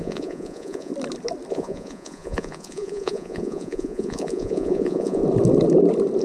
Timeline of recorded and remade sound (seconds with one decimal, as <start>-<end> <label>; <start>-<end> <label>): 0.0-0.9 remade; 0.9-1.5 recorded; 1.5-5.2 remade; 5.2-6.2 recorded